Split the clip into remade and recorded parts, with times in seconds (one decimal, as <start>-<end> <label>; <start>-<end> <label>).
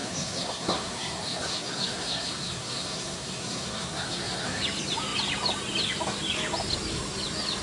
0.0-4.6 remade; 4.6-7.6 recorded